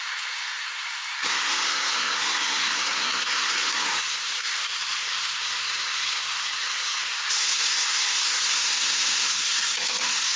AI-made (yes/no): yes